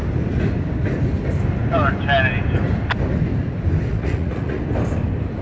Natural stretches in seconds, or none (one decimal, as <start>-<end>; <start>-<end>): 0.0-3.9; 4.6-5.4